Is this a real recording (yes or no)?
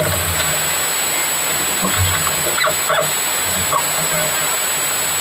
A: yes